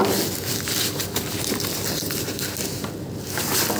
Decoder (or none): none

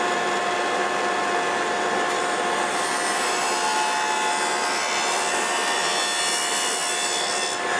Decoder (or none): none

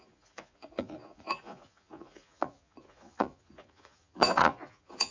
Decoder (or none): vocoder, Vocos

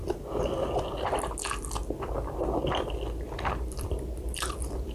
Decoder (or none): none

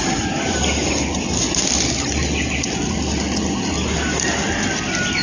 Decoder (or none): none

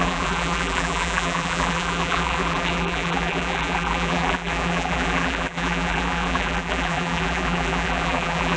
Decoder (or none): vocoder, BigVGAN v2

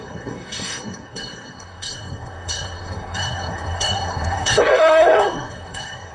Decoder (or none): codec, SNAC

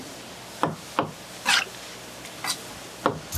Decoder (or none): none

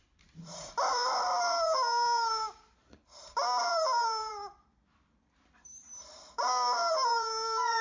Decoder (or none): vocoder, BigVGAN v2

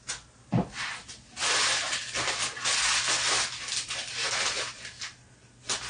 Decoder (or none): none